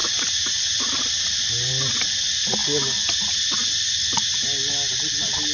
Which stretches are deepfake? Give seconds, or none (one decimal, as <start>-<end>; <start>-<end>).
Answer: none